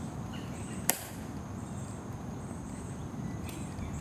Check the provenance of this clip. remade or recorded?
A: remade